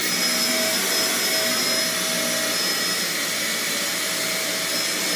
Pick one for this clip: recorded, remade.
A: recorded